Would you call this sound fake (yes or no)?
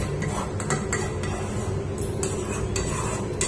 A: no